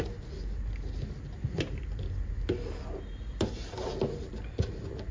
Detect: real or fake real